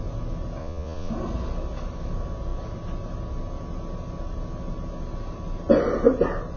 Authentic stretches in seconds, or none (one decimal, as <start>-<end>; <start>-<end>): 0.0-0.6; 1.1-6.6